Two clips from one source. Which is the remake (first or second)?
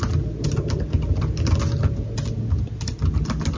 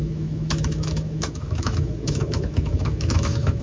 second